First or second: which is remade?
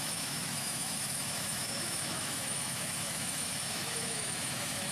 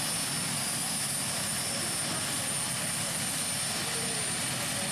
first